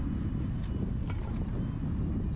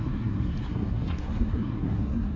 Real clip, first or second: first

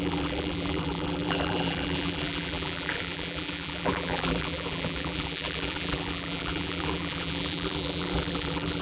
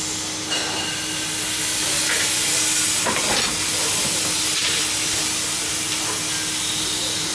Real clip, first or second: second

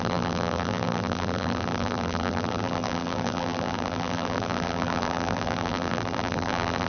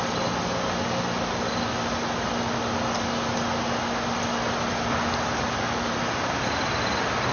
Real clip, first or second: second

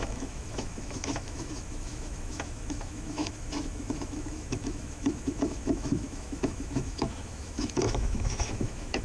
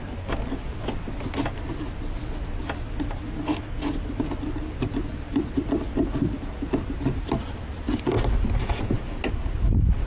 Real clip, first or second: second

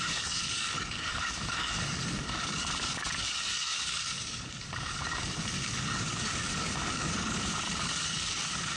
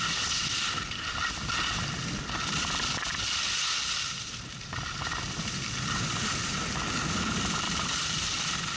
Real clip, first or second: second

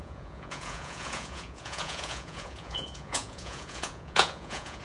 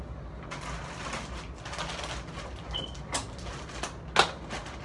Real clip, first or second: second